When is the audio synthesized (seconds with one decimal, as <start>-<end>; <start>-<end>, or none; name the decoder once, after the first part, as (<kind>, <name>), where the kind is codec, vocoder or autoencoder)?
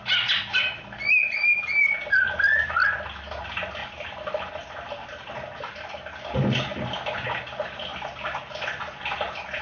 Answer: none